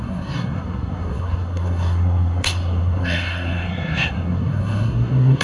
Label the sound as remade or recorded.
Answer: remade